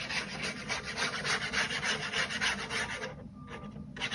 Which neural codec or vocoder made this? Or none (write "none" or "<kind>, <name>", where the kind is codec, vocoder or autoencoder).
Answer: none